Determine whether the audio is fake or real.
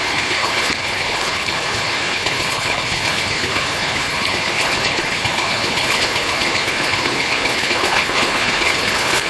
fake